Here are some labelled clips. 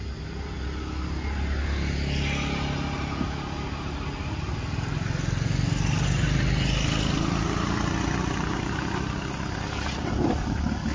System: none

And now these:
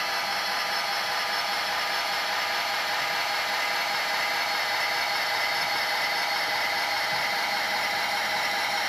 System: vocoder, BigVGAN v2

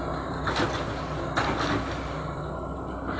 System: none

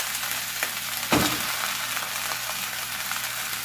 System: none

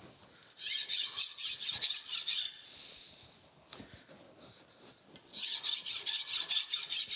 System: none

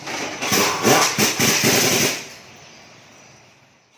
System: vocoder, BigVGAN v2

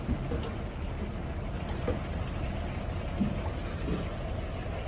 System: none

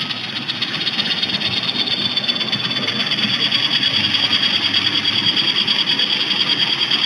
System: none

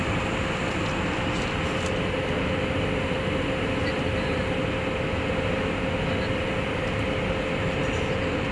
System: none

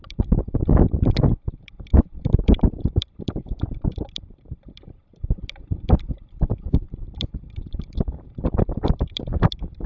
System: vocoder, BigVGAN v2